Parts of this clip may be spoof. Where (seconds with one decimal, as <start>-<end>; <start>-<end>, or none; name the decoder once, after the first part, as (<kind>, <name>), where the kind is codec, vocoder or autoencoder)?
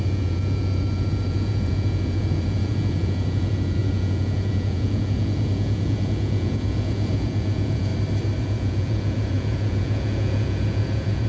0.0-7.9 (vocoder, Vocos); 8.4-11.3